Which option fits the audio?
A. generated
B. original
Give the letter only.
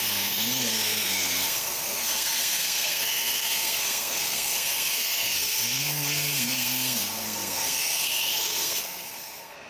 A